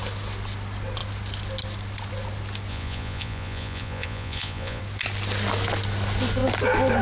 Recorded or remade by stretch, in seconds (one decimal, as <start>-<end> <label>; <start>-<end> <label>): 0.0-2.7 recorded; 2.7-4.8 remade; 4.8-7.0 recorded